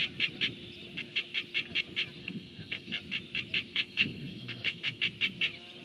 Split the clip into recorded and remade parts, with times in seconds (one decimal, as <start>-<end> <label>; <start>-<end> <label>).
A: 0.0-2.2 recorded; 2.2-3.0 remade; 3.0-3.7 recorded; 3.7-5.0 remade; 5.0-5.8 recorded

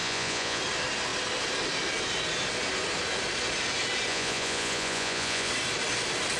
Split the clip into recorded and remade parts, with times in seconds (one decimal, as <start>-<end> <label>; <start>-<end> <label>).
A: 0.0-0.6 remade; 0.6-4.1 recorded; 4.1-5.5 remade; 5.5-6.4 recorded